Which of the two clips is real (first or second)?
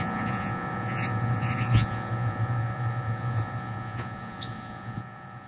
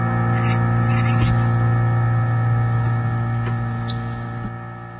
second